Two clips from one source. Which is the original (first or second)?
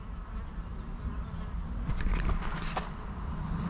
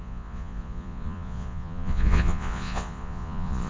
first